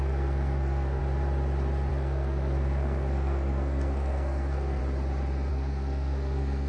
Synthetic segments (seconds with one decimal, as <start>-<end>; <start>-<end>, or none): 0.0-1.0; 1.9-4.8; 5.5-6.7